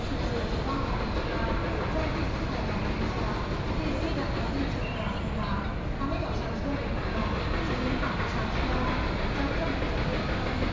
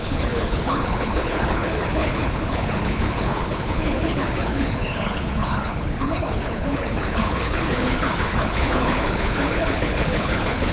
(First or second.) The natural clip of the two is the first